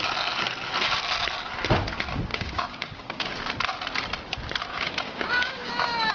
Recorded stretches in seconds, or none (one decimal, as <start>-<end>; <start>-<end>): 0.0-2.3; 3.4-4.7